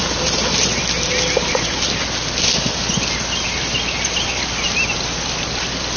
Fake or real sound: real